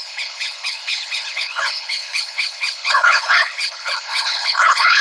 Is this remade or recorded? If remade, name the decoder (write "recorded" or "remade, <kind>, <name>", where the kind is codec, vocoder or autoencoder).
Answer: remade, codec, HILCodec